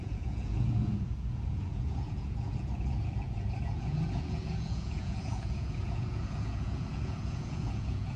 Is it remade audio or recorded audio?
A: remade